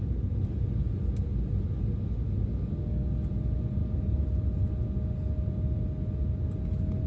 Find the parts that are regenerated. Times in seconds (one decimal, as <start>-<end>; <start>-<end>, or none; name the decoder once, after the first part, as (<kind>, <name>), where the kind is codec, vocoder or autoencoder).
2.5-3.1 (codec, DAC)